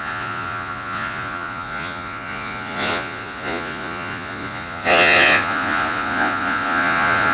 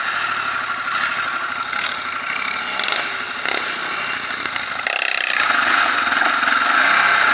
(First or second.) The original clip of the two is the second